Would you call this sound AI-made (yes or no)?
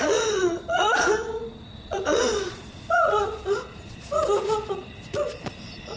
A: yes